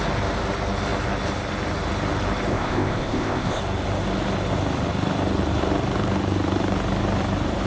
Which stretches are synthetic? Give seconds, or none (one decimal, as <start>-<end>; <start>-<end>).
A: 2.5-3.6